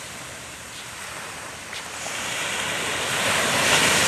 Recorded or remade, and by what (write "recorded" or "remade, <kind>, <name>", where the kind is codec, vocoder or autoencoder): recorded